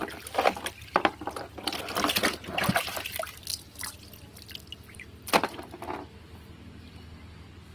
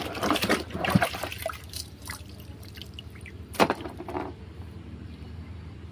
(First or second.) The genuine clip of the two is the first